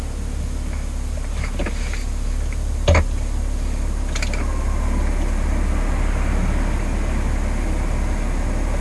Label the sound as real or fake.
real